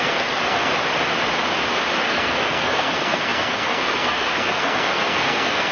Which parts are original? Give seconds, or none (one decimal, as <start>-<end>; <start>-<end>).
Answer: 0.7-2.0